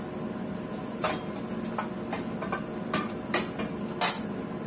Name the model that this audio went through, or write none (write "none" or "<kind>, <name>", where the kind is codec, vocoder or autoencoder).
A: none